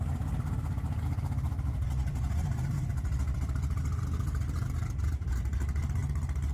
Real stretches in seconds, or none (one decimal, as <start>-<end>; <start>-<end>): 0.0-1.7; 5.6-6.5